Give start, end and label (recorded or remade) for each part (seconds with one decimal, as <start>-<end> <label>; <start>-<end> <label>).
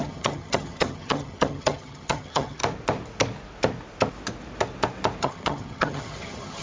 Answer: 0.0-2.6 remade; 2.6-5.2 recorded; 5.2-6.6 remade